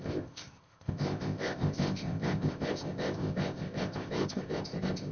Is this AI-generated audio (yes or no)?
yes